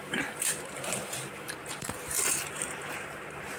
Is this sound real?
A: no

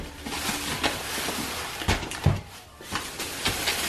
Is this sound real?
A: yes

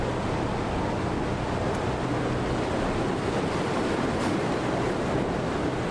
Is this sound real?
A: no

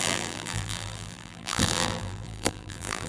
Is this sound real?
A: no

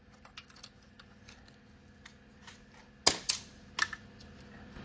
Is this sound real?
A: yes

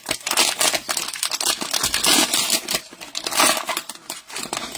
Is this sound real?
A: yes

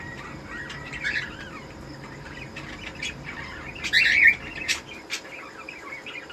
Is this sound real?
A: no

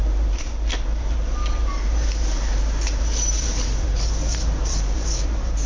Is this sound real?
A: no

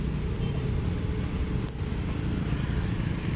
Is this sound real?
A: yes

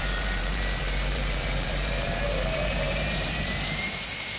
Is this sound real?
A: no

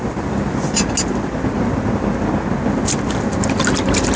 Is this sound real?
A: yes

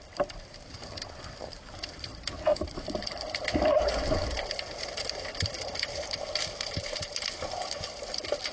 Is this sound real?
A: no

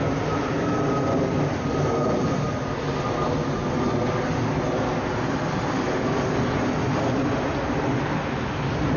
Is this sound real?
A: yes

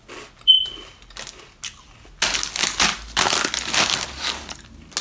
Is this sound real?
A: yes